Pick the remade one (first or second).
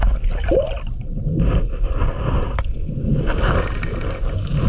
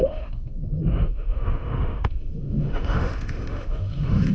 second